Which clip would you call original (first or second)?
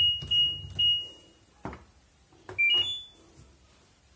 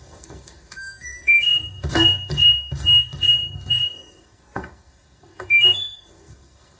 first